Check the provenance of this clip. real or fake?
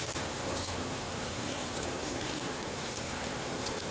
fake